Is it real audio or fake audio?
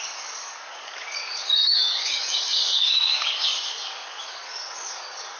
fake